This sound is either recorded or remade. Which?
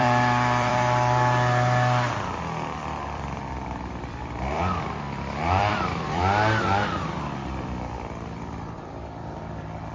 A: remade